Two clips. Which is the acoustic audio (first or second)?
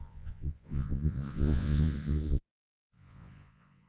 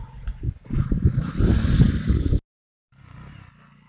second